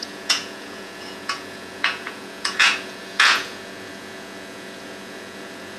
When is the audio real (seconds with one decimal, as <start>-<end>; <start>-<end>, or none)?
none